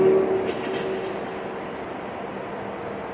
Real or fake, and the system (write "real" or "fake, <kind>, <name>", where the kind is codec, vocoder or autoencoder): real